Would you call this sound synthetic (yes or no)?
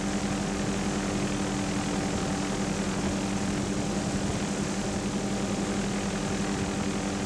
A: no